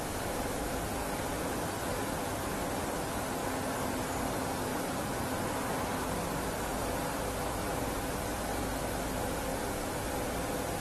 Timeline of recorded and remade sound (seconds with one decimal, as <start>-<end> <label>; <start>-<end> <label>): 0.0-1.0 recorded; 1.0-1.9 remade; 1.9-4.7 recorded; 4.7-6.3 remade; 6.3-10.8 recorded